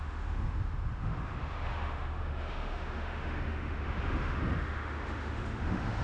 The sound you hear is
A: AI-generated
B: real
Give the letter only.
A